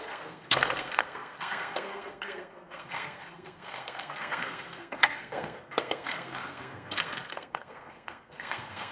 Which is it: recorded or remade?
remade